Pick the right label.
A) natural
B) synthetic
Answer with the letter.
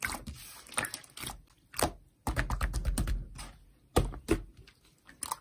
A